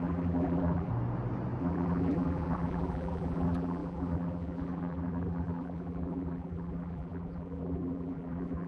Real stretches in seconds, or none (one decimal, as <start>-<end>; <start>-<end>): 0.9-1.6